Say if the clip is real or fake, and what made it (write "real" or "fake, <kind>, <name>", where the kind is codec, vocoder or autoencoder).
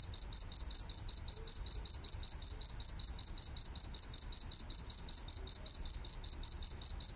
real